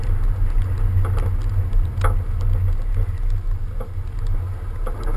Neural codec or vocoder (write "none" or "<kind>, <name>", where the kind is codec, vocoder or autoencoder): none